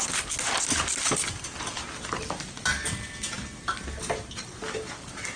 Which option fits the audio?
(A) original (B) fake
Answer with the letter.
A